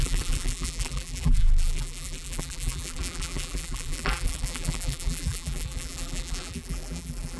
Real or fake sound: fake